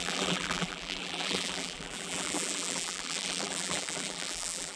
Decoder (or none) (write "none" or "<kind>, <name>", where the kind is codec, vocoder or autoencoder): vocoder, BigVGAN v2